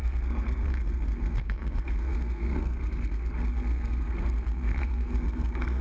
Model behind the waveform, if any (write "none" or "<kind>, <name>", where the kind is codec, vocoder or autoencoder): codec, SNAC